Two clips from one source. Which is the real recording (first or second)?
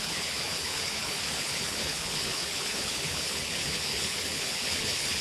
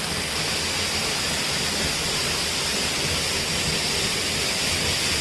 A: second